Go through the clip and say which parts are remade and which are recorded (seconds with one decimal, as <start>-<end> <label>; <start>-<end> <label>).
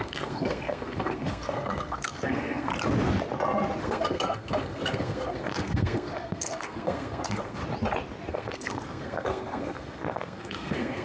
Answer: 0.0-2.7 remade; 2.7-3.8 recorded; 3.8-7.6 remade; 7.6-8.3 recorded; 8.3-11.0 remade